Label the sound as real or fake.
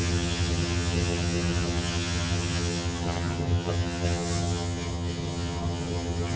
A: fake